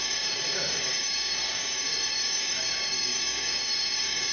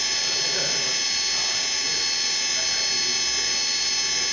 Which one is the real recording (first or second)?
second